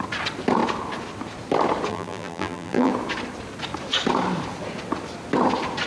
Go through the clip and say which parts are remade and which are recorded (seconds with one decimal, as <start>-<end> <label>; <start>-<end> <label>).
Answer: 0.0-1.9 recorded; 1.9-2.9 remade; 2.9-5.9 recorded